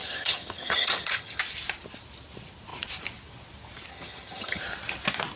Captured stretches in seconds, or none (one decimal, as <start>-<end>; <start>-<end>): 1.4-3.9; 4.6-5.4